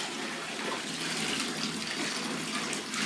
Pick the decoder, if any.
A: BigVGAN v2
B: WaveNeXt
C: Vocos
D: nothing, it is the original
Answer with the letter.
D